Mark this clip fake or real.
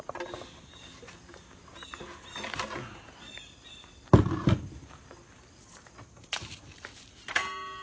real